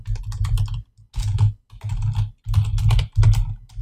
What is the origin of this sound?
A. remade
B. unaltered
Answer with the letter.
B